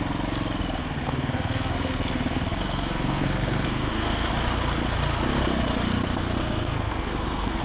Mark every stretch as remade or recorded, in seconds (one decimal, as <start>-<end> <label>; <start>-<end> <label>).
0.0-0.8 recorded; 0.8-4.3 remade; 4.3-6.4 recorded; 6.4-7.6 remade